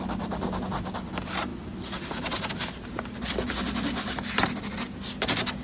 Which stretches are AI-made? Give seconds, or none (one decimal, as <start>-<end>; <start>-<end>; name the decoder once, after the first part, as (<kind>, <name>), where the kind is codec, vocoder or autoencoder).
none